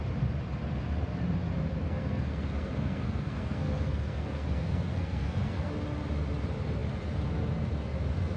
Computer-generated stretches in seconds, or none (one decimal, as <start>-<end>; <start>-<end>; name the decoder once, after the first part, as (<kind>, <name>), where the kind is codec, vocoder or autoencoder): 1.8-5.7 (codec, SNAC)